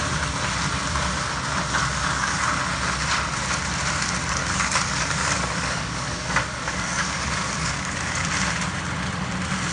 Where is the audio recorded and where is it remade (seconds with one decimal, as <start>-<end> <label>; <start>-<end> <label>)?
0.0-1.8 recorded; 1.8-2.4 remade; 2.4-4.4 recorded; 4.4-8.3 remade; 8.3-9.7 recorded